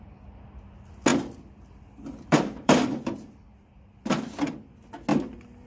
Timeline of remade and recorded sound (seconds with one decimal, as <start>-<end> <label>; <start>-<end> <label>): 0.0-1.1 recorded; 1.1-4.2 remade; 4.2-5.1 recorded; 5.1-5.7 remade